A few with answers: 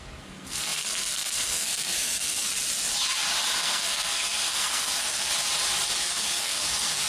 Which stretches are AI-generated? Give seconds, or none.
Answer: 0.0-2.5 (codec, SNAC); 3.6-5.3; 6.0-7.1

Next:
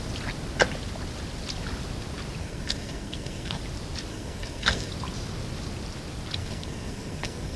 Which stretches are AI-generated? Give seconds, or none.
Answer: 2.4-3.6 (codec, SNAC); 4.1-4.9; 6.4-7.6

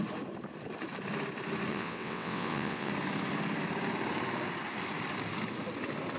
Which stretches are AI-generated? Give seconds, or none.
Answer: 1.7-2.9 (vocoder, WaveNeXt)

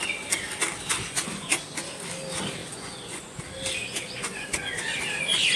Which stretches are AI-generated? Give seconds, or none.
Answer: 0.9-1.6 (vocoder, Vocos); 2.6-3.4; 3.8-5.0

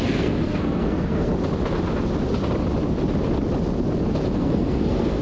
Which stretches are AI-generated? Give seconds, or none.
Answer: 0.0-1.3 (codec, SNAC); 4.4-5.2

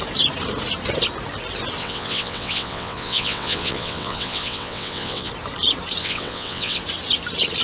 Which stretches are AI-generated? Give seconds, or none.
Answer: 1.8-5.3 (vocoder, WaveNeXt); 6.0-6.8

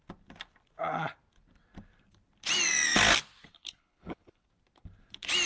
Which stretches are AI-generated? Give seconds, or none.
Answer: 3.5-4.5 (codec, HILCodec)

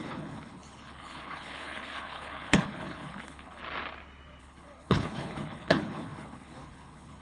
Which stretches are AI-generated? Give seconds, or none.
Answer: 0.0-3.6 (codec, HILCodec); 4.4-7.2